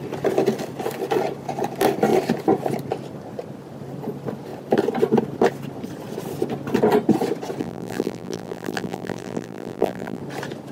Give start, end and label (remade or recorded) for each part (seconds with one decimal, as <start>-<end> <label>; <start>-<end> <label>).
0.0-7.6 recorded; 7.6-10.2 remade; 10.2-10.7 recorded